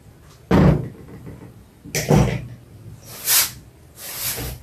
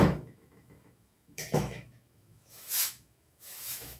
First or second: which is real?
first